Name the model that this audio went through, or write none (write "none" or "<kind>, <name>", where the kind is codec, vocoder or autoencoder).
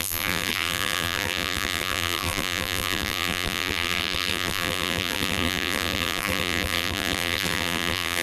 vocoder, BigVGAN v2